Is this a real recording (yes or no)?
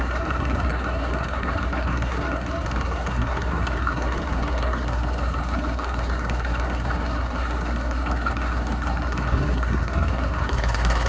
no